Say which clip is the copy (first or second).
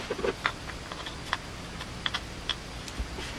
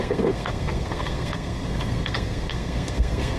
second